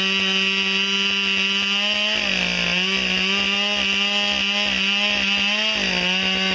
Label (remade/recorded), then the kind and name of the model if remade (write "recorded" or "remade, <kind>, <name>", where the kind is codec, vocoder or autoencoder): recorded